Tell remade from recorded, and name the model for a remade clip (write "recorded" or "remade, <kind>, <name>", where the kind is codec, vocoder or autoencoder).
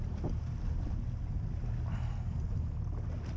recorded